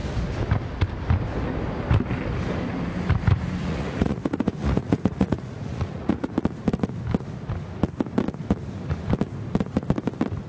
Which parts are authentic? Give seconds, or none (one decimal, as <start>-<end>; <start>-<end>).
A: 0.0-3.6; 6.3-10.5